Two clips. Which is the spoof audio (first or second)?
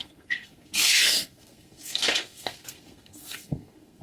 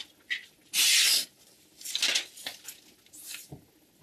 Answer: first